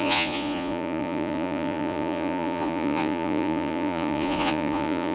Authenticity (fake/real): fake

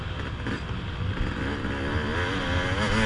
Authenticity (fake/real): real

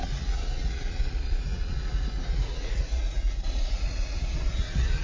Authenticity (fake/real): fake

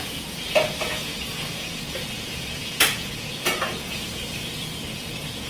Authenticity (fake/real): fake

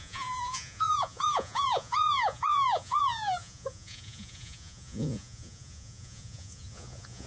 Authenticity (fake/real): fake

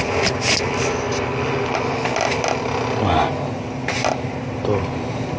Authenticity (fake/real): real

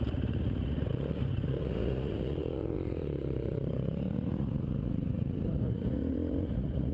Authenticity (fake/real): fake